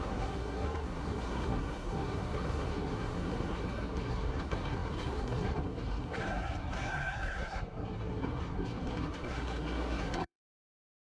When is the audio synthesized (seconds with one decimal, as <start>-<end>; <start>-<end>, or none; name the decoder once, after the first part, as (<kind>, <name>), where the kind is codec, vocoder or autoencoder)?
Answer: 0.0-11.1 (codec, SNAC)